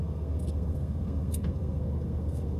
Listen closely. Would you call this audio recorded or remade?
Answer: remade